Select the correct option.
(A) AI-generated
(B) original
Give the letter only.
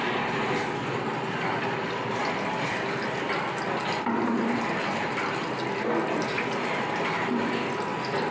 B